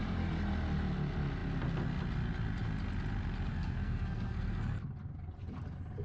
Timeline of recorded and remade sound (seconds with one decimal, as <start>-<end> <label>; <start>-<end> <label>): 0.0-3.5 recorded; 3.5-4.8 remade; 4.8-6.0 recorded